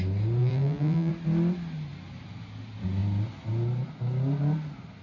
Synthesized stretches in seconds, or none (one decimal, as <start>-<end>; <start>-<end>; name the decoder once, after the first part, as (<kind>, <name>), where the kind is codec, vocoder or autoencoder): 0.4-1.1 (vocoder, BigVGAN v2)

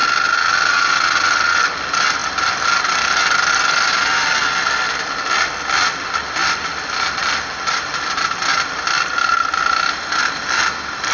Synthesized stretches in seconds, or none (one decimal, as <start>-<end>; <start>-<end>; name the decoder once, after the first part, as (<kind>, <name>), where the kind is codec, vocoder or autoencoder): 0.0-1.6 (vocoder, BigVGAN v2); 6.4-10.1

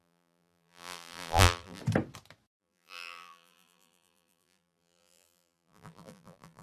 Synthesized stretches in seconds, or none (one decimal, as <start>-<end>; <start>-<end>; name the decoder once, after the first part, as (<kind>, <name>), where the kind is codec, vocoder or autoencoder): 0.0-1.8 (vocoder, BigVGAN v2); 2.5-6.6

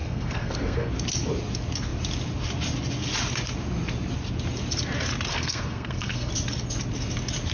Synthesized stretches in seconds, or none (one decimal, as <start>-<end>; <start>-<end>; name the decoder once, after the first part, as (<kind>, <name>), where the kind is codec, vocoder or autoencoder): 0.0-0.9 (codec, SNAC); 5.3-6.3

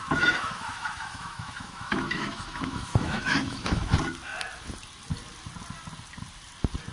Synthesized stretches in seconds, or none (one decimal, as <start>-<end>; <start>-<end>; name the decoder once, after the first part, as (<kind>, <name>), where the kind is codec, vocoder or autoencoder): 0.0-3.9 (autoencoder, DAC-VAE)